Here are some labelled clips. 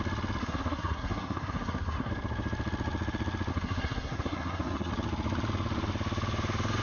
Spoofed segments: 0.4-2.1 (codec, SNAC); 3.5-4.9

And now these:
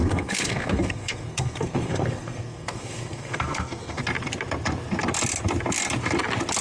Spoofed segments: 0.0-4.0 (codec, SNAC)

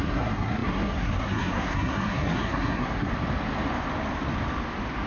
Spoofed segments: 0.0-3.1 (codec, SNAC)

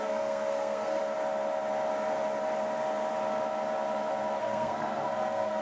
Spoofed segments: 0.0-1.0 (codec, SNAC); 4.4-5.6